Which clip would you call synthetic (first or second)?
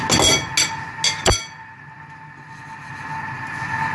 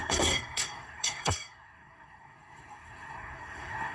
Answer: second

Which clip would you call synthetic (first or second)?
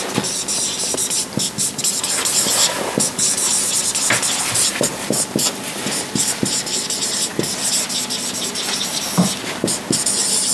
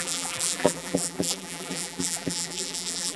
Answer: second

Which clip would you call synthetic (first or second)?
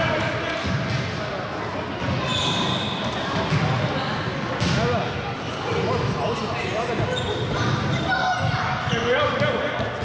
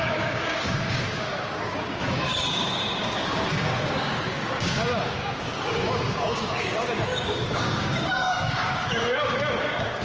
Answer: second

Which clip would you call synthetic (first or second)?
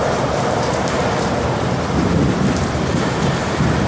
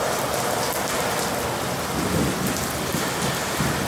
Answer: first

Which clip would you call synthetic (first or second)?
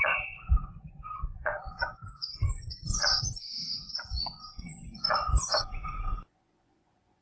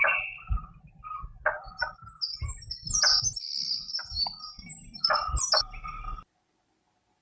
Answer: first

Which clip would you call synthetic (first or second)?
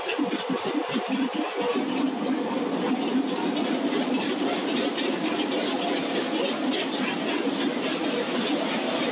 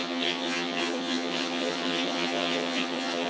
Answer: second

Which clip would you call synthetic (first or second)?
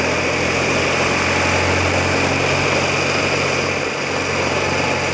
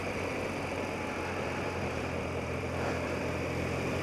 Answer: second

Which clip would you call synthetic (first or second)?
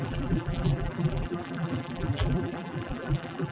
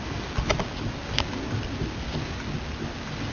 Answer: first